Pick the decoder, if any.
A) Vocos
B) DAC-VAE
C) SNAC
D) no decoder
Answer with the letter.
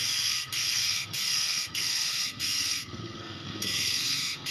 C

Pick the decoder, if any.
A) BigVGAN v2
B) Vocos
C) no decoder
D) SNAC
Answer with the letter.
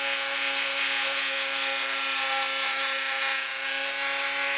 C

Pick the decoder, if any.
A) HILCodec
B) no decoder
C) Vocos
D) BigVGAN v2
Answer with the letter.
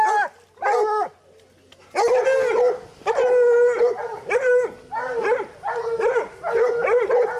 B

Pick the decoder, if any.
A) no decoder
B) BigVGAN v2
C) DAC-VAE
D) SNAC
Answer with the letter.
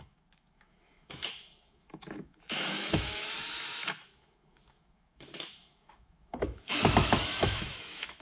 C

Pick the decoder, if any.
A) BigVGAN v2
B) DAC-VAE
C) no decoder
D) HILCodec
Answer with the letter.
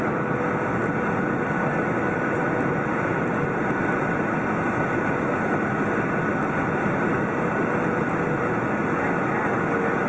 C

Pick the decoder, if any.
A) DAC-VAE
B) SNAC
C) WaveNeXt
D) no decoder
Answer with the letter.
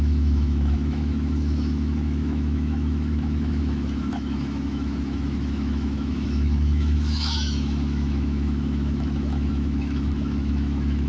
A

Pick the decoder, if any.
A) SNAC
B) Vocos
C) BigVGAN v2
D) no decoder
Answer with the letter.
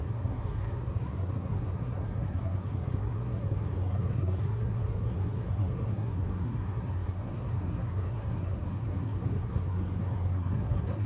A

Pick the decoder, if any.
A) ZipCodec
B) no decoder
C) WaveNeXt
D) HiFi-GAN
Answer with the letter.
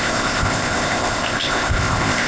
A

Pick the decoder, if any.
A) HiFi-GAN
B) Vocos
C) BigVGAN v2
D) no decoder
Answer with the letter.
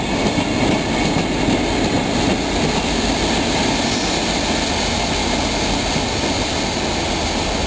D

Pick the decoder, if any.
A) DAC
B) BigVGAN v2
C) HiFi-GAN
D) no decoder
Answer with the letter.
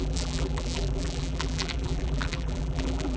B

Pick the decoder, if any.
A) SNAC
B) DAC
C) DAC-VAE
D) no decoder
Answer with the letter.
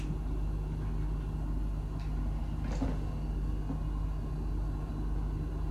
D